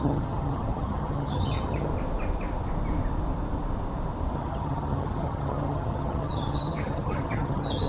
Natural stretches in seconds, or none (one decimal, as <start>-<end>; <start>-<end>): 1.9-4.3